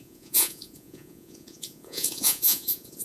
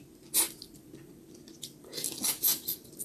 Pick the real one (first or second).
second